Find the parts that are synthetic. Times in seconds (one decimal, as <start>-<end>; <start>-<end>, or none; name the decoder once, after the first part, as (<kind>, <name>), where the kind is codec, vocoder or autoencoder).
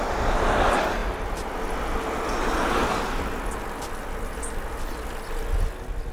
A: none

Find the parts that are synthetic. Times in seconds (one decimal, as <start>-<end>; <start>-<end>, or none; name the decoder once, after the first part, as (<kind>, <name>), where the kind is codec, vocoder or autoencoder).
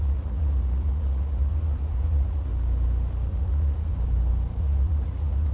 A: 0.0-2.5 (vocoder, Vocos); 3.3-3.9; 4.6-5.5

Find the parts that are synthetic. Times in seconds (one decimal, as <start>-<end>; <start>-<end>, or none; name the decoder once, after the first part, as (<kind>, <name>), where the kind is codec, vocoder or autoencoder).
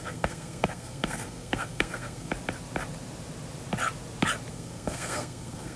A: 0.0-2.3 (codec, SNAC); 4.5-5.8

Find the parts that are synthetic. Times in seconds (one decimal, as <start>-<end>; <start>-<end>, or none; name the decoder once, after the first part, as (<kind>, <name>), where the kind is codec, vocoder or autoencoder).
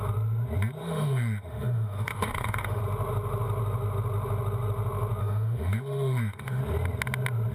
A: 0.8-2.8 (autoencoder, DAC-VAE); 5.2-6.6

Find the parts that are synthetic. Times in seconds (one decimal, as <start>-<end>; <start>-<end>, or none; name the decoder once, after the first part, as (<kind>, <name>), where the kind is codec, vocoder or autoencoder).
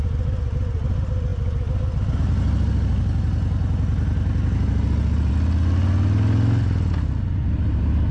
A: none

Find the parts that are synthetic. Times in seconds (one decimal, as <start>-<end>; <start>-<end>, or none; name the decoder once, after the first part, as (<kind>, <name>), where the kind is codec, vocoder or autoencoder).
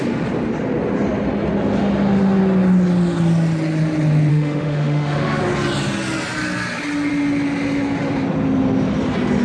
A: 4.3-5.4 (autoencoder, DAC-VAE)